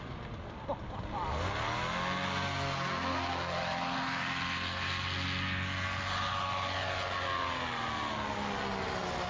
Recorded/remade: recorded